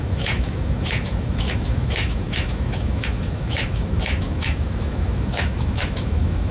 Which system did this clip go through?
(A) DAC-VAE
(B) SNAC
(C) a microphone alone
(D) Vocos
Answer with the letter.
A